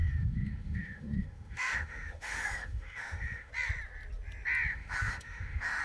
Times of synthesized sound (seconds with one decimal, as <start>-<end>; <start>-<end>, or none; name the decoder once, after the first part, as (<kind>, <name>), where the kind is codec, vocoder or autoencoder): 0.0-3.5 (autoencoder, DAC-VAE); 4.7-5.8